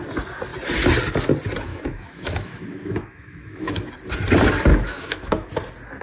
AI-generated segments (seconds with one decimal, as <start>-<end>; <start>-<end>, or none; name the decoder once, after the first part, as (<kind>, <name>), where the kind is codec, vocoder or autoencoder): 1.7-3.9 (autoencoder, DAC-VAE); 4.7-5.5